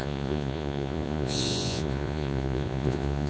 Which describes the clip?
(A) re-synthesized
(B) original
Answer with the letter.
A